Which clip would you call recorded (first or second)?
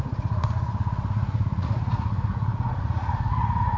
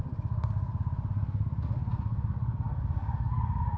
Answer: second